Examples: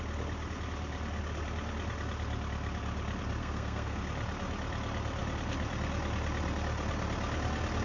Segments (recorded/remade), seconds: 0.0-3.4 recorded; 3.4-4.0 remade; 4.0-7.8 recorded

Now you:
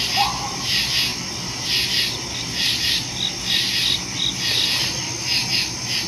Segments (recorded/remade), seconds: 0.0-6.1 recorded

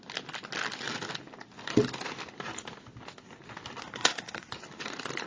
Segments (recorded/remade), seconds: 0.0-3.8 recorded; 3.8-4.5 remade; 4.5-5.3 recorded

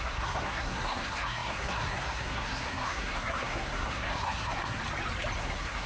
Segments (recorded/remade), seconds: 0.0-4.8 remade; 4.8-5.4 recorded; 5.4-5.9 remade

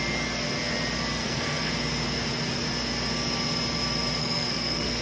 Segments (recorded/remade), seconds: 0.0-1.2 recorded; 1.2-1.7 remade; 1.7-4.2 recorded; 4.2-5.0 remade